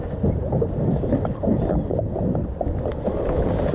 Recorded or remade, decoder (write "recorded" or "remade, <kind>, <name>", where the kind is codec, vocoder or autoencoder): remade, vocoder, BigVGAN v2